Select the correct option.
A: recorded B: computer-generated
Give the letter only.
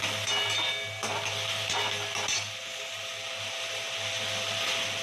A